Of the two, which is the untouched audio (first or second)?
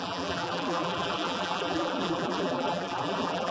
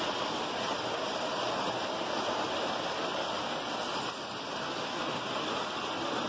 second